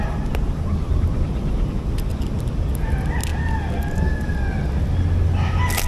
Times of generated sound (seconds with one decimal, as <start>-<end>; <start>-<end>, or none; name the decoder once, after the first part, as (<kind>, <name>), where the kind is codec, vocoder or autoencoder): none